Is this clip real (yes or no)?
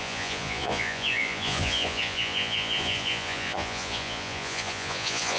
no